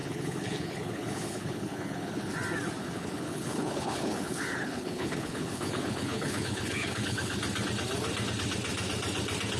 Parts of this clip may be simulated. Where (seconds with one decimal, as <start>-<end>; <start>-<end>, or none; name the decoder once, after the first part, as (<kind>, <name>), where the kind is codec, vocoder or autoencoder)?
0.0-2.3 (codec, HILCodec); 2.8-7.4